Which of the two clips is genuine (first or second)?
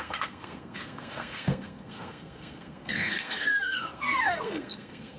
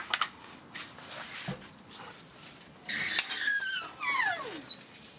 second